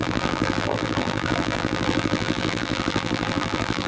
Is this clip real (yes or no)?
no